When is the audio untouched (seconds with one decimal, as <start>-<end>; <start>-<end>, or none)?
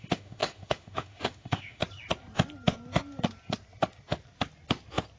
1.8-5.2